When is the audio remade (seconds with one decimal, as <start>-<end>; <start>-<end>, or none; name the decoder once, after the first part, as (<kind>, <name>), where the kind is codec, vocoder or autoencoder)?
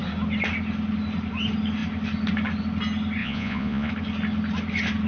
3.2-3.9 (vocoder, Vocos)